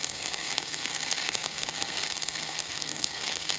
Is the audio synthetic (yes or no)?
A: yes